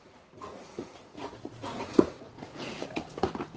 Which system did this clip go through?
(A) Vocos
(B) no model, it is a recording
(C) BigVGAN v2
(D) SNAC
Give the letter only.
A